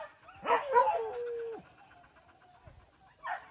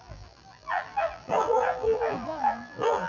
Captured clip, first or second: first